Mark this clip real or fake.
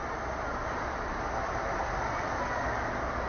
real